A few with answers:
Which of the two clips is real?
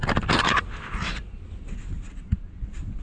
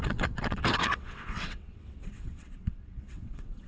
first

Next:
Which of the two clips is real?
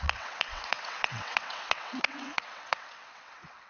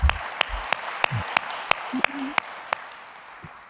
second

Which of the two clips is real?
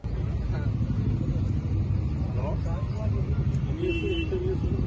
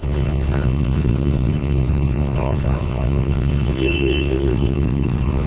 first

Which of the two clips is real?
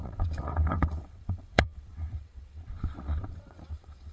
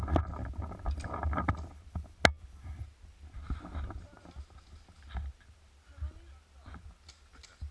second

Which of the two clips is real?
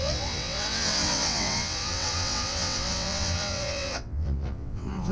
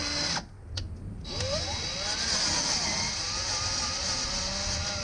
second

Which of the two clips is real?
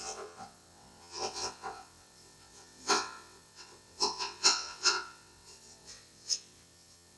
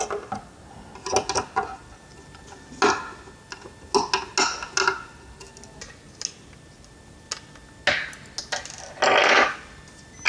second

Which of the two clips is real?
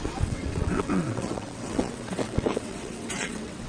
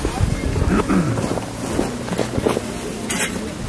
second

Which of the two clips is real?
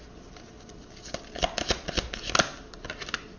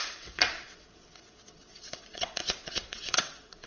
first